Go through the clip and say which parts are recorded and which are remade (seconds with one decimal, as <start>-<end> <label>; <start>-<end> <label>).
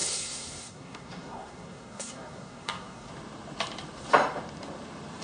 0.0-3.1 remade; 3.1-5.2 recorded